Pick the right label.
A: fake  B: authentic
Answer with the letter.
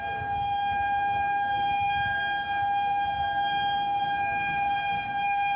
A